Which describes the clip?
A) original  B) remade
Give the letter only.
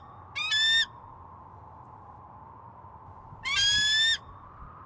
A